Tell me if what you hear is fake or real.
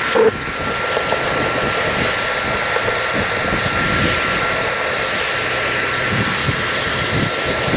real